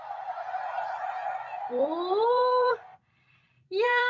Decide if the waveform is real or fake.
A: fake